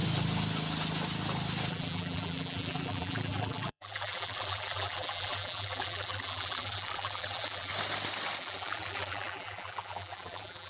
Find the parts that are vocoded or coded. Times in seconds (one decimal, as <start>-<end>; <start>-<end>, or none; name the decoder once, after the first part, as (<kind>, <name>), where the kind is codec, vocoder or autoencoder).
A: 1.7-7.7 (vocoder, BigVGAN v2); 8.4-10.7